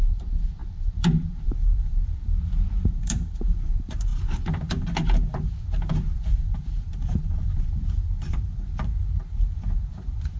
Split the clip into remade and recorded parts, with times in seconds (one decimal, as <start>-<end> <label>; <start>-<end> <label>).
0.0-10.4 remade